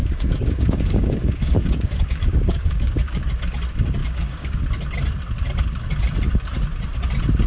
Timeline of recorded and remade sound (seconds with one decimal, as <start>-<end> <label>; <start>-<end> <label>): 0.0-3.2 remade; 3.2-4.0 recorded; 4.0-4.6 remade; 4.6-7.5 recorded